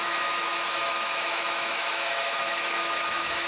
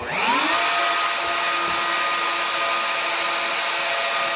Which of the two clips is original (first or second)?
second